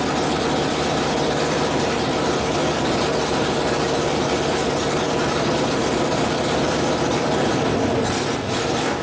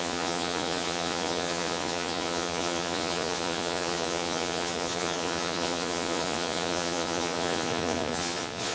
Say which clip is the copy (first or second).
second